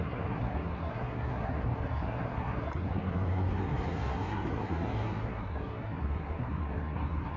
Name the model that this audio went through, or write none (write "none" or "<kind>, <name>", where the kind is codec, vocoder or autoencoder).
codec, SNAC